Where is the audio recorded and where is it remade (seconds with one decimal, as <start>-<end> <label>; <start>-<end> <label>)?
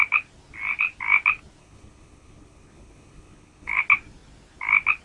0.0-1.6 recorded; 1.6-3.8 remade; 3.8-5.0 recorded